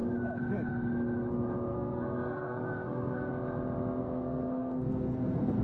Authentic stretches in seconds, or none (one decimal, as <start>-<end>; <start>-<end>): 0.0-1.7; 3.3-4.0